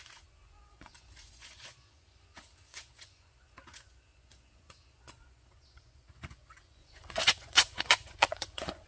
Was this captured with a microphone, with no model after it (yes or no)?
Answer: no